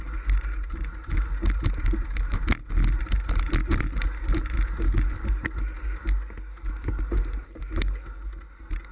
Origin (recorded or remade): recorded